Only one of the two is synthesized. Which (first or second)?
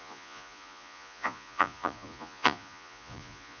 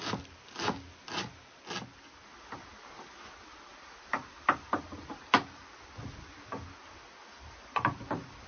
first